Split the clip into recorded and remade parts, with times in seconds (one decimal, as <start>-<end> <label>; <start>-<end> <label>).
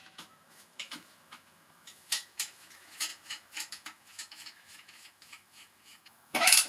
0.0-6.7 remade